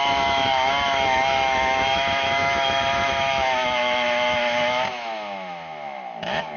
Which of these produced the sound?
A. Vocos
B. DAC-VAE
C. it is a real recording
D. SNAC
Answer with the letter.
B